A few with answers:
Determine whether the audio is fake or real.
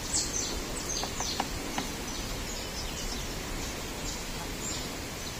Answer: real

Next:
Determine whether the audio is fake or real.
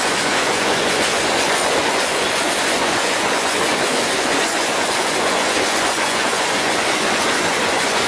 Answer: fake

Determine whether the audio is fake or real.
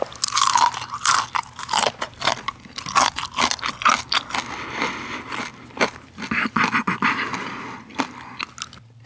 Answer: real